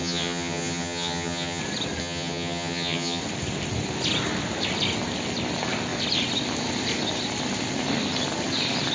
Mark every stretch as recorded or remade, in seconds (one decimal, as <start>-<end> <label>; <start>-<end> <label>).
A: 0.0-1.6 remade; 1.6-2.0 recorded; 2.0-3.2 remade; 3.2-8.9 recorded

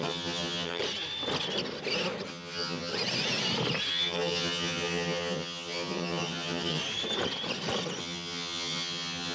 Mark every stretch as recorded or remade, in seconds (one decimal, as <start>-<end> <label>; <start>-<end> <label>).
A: 0.0-0.8 remade; 0.8-2.3 recorded; 2.3-2.9 remade; 2.9-3.9 recorded; 3.9-6.8 remade; 6.8-8.0 recorded; 8.0-9.3 remade

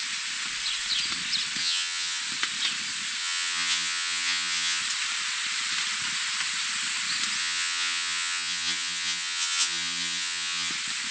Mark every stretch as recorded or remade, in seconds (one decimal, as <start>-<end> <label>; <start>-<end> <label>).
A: 0.0-1.6 recorded; 1.6-2.2 remade; 2.2-3.2 recorded; 3.2-4.8 remade; 4.8-7.4 recorded; 7.4-10.7 remade; 10.7-11.1 recorded

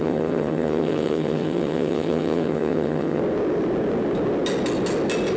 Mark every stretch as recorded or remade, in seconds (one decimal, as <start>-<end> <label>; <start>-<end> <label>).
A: 0.0-3.2 remade; 3.2-5.4 recorded